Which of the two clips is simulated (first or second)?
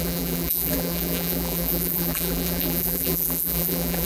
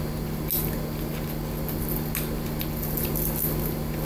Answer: first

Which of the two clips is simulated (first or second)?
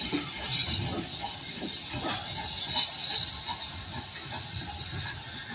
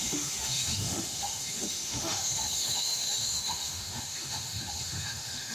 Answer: second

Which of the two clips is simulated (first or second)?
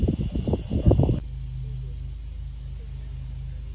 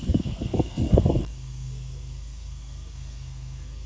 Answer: second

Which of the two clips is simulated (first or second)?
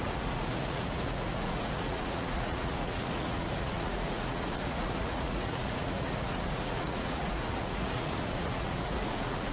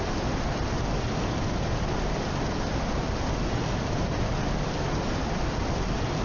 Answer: first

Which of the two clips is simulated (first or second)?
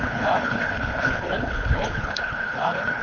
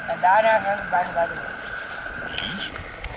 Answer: first